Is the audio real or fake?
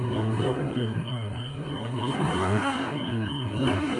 fake